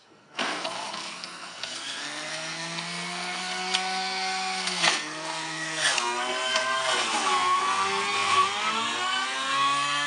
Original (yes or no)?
no